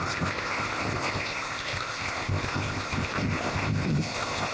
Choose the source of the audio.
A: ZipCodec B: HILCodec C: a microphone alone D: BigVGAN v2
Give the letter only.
A